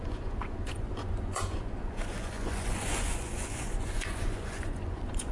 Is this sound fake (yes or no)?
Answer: yes